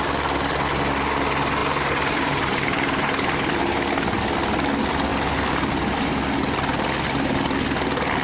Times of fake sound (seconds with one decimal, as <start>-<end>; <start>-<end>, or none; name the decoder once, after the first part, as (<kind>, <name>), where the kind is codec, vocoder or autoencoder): 1.6-3.6 (vocoder, BigVGAN v2)

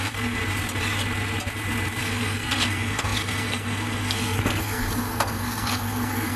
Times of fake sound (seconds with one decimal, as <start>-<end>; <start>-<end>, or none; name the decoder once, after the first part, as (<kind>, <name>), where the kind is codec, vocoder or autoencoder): 0.0-0.4 (codec, SNAC); 2.0-6.4

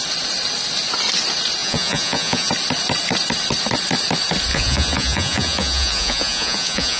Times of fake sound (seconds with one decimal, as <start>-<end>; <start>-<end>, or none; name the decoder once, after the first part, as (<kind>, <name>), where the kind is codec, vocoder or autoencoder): 1.6-2.5 (vocoder, Vocos); 4.5-7.0